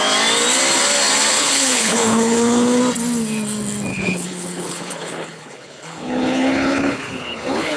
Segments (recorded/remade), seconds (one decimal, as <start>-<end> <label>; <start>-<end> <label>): 0.0-1.3 recorded; 1.3-2.8 remade; 2.8-3.9 recorded; 3.9-7.8 remade